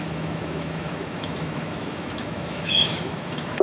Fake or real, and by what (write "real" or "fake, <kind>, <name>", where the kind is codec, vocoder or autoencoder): fake, autoencoder, DAC-VAE